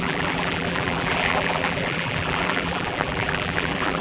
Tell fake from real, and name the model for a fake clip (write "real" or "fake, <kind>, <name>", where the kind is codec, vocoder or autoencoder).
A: fake, vocoder, BigVGAN v2